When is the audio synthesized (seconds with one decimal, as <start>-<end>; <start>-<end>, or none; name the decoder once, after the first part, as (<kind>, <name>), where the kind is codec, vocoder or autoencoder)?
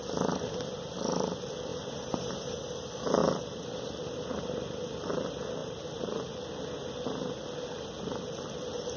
none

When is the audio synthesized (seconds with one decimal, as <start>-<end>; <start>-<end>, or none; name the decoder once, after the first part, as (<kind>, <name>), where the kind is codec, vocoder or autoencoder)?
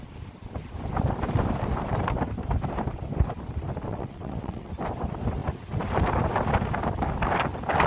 3.9-4.7 (vocoder, WaveNeXt)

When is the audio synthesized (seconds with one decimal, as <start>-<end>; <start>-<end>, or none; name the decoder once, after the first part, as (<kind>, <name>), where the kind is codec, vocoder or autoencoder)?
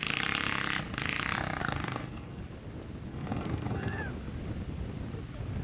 1.6-2.4 (codec, SNAC); 3.1-4.0